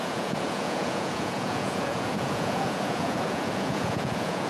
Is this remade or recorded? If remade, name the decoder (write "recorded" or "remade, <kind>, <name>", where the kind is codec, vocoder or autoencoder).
remade, vocoder, Vocos